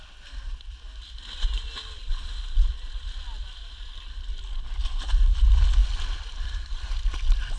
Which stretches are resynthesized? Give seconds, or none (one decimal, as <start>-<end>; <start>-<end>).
none